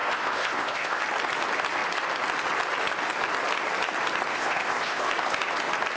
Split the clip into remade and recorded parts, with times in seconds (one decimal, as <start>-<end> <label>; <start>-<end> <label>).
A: 0.0-1.0 remade; 1.0-4.3 recorded; 4.3-5.1 remade; 5.1-6.0 recorded